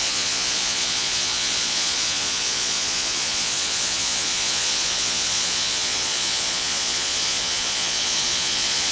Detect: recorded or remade remade